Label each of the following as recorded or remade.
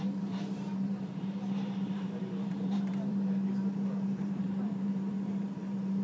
remade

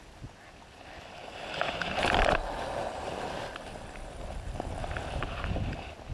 remade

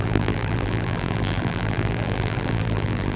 remade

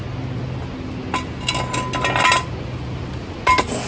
recorded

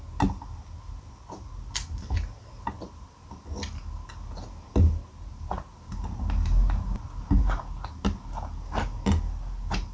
recorded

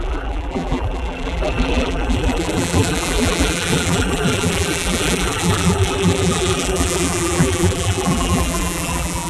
remade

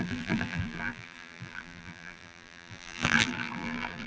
remade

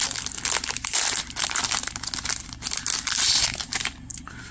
recorded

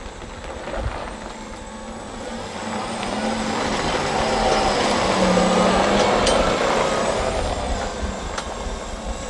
recorded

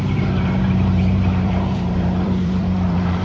remade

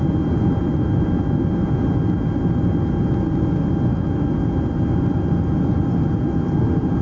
recorded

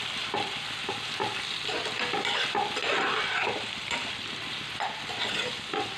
remade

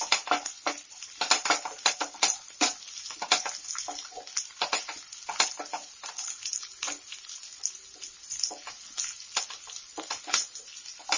recorded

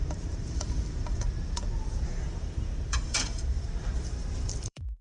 remade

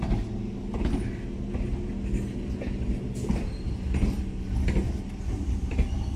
recorded